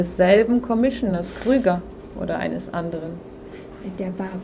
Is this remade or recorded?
remade